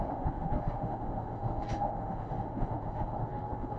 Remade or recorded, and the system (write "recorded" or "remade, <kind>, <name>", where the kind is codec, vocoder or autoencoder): remade, autoencoder, DAC-VAE